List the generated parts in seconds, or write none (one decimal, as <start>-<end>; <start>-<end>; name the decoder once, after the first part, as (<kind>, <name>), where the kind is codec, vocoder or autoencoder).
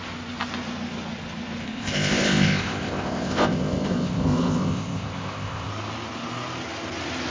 1.6-5.7 (codec, ZipCodec)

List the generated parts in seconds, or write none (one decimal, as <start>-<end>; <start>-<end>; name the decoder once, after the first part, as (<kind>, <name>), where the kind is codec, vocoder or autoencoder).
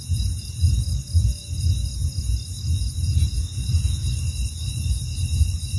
0.0-0.6 (vocoder, BigVGAN v2); 2.9-4.0; 5.0-5.8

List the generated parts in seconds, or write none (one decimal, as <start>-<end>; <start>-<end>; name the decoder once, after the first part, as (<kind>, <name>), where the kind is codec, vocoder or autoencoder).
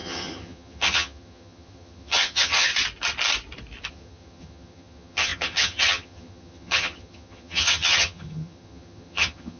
0.0-2.7 (vocoder, HiFi-GAN); 3.9-9.6